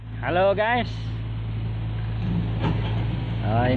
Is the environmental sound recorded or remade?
recorded